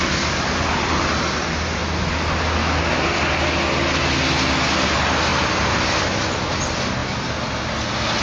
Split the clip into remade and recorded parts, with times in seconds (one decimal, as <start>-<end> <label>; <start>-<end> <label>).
0.0-8.2 recorded

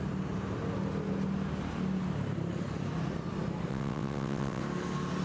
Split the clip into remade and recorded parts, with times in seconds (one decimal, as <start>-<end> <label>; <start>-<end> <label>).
0.0-3.7 recorded; 3.7-4.6 remade; 4.6-5.2 recorded

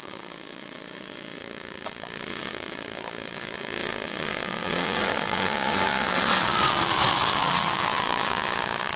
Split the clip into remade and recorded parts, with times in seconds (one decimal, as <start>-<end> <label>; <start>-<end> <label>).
0.0-9.0 remade

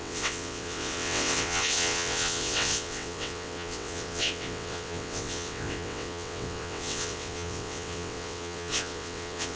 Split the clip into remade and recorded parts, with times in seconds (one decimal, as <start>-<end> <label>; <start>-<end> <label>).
0.0-9.6 remade

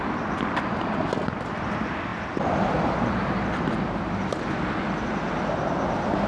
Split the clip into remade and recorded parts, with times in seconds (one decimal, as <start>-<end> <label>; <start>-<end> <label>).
0.0-6.3 recorded

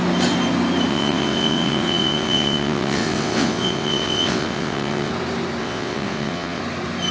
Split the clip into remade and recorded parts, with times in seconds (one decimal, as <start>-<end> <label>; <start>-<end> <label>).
0.0-0.9 recorded; 0.9-5.1 remade; 5.1-5.6 recorded; 5.6-6.6 remade; 6.6-7.1 recorded